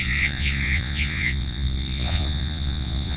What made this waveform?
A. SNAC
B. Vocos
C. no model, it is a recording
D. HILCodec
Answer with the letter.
B